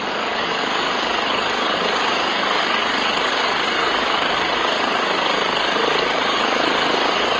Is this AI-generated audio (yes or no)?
yes